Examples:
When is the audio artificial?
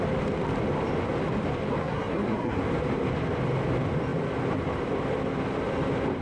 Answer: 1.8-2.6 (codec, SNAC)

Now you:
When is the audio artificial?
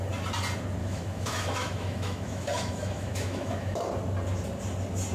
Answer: 0.8-3.9 (autoencoder, DAC-VAE)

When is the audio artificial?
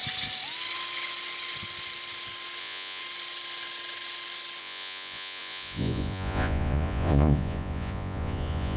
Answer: 2.6-3.0 (vocoder, Vocos); 4.6-8.8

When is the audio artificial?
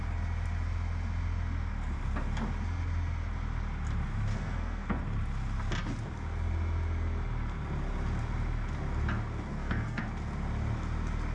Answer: 4.3-5.0 (codec, SNAC); 9.5-10.0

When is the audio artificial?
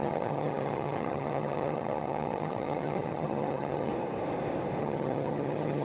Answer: 0.0-3.9 (vocoder, HiFi-GAN); 4.8-5.8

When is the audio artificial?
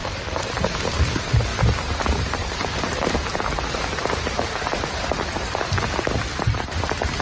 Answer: 0.0-0.5 (vocoder, BigVGAN v2); 1.5-2.0; 2.4-5.6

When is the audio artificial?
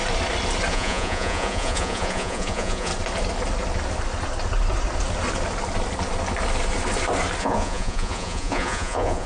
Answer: 0.7-2.9 (vocoder, Vocos); 7.4-9.3